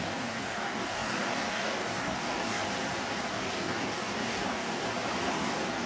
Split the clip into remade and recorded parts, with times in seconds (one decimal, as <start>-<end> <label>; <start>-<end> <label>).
0.0-2.6 remade; 2.6-3.3 recorded; 3.3-4.8 remade; 4.8-5.3 recorded; 5.3-5.9 remade